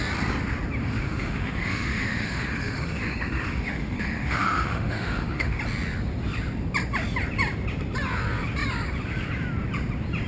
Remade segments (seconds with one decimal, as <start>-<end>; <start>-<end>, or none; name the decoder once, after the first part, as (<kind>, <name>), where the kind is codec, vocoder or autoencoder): 0.8-5.6 (autoencoder, DAC-VAE)

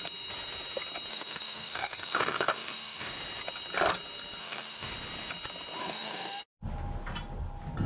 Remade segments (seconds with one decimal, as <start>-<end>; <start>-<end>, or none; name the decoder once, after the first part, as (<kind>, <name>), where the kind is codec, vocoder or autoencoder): 1.1-3.1 (autoencoder, DAC-VAE); 4.4-4.9; 5.8-6.4

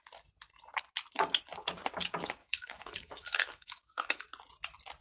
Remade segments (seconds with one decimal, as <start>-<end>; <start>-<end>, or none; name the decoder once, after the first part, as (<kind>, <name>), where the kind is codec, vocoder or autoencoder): 2.4-4.2 (autoencoder, DAC-VAE)

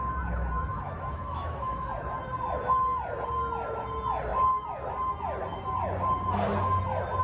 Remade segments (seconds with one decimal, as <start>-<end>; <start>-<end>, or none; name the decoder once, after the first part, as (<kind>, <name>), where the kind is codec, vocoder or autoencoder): 0.7-1.9 (autoencoder, DAC-VAE)

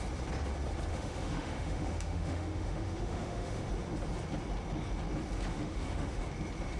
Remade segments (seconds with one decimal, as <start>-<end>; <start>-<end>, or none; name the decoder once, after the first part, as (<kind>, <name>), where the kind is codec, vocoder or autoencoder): 0.9-3.7 (autoencoder, DAC-VAE); 5.5-6.2

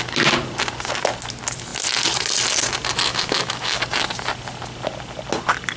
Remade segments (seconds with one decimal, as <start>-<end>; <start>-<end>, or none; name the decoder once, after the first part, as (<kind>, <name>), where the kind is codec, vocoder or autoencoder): 3.1-3.8 (autoencoder, DAC-VAE)